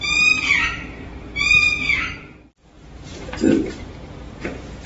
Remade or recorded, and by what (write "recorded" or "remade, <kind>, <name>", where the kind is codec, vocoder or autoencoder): recorded